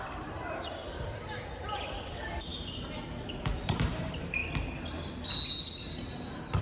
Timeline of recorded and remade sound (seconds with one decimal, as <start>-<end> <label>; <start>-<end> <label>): 0.0-2.5 remade; 2.5-3.6 recorded; 3.6-4.4 remade; 4.4-6.6 recorded